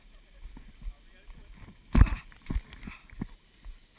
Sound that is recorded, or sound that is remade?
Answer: recorded